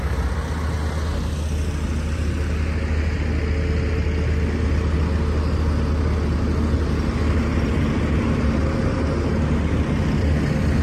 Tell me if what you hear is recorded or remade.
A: recorded